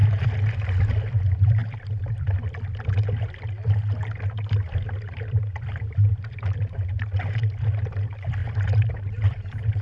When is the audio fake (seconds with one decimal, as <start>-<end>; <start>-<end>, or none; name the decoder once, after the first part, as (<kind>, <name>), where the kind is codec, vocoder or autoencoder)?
0.9-1.6 (vocoder, BigVGAN v2); 5.4-9.8